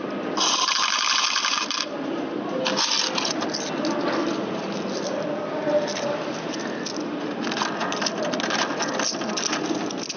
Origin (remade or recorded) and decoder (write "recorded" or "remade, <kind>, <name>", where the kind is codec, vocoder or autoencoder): recorded